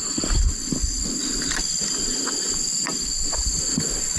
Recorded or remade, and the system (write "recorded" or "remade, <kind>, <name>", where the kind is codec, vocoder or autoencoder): recorded